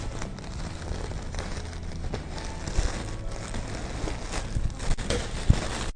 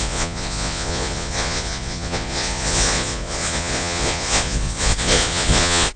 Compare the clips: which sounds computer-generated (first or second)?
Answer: second